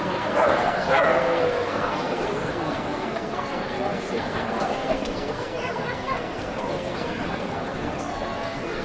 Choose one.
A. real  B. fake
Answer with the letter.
B